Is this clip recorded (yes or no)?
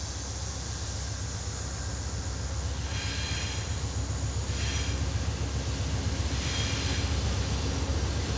yes